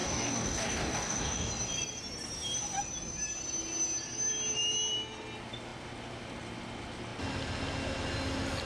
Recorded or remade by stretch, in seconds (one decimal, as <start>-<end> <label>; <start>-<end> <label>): 0.0-1.5 remade; 1.5-8.7 recorded